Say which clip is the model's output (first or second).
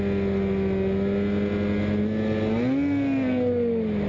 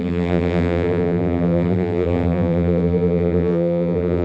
second